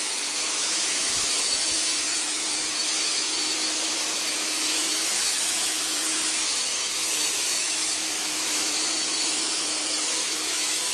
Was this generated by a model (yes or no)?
yes